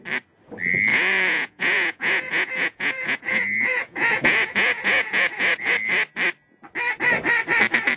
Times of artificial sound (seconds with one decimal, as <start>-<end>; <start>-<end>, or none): 0.9-5.7